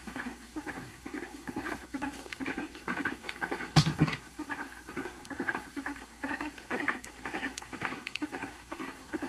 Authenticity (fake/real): fake